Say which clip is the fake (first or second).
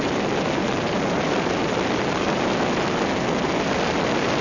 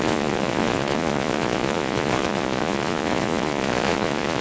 second